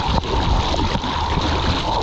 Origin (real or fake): real